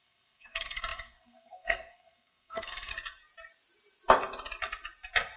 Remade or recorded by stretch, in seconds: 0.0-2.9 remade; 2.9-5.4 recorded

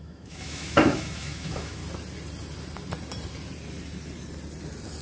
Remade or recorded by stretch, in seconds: 0.0-1.8 remade; 1.8-5.0 recorded

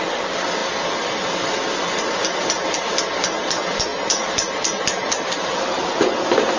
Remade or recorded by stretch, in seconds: 0.0-6.6 recorded

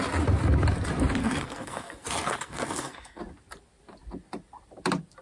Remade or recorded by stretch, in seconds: 0.0-1.2 recorded; 1.2-3.2 remade; 3.2-5.2 recorded